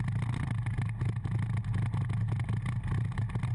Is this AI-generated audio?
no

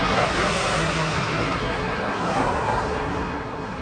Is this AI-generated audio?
yes